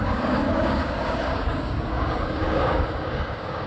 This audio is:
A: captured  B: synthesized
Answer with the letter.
B